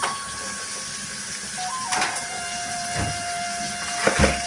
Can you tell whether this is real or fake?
real